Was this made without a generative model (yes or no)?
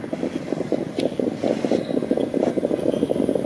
yes